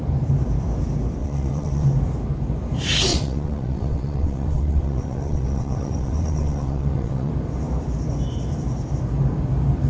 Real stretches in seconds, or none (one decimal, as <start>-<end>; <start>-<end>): 0.0-1.2; 1.9-3.1; 7.3-9.9